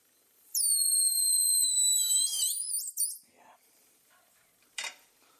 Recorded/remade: remade